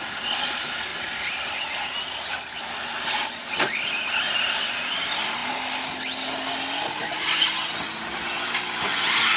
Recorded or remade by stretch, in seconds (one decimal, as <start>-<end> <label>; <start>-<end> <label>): 0.0-9.4 recorded